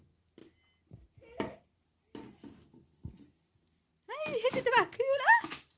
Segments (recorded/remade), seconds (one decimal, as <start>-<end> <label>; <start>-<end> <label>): 0.0-5.8 recorded